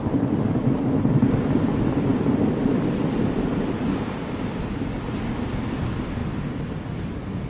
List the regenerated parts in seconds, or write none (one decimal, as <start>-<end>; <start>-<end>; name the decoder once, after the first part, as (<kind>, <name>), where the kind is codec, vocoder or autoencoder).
none